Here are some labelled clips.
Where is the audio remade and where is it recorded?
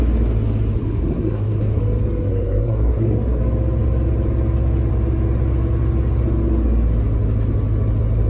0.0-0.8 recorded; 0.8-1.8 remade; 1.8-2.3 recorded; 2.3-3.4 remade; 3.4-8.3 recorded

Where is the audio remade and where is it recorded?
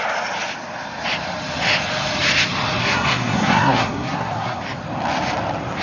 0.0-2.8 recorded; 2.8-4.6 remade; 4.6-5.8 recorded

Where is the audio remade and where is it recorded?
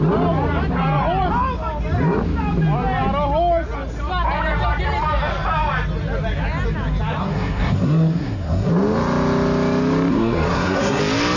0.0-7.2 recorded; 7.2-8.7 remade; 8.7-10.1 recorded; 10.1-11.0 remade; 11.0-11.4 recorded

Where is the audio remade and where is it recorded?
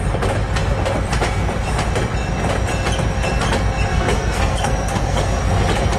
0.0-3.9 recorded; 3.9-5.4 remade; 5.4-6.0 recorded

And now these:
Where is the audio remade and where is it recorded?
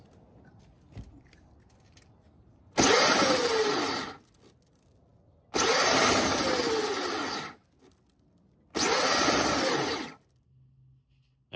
0.0-11.6 recorded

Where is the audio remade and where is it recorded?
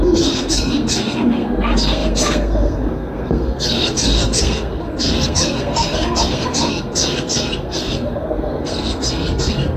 0.0-9.8 remade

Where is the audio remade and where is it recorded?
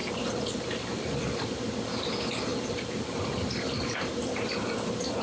0.0-5.2 recorded